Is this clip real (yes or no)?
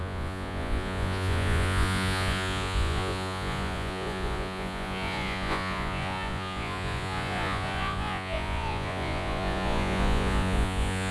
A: no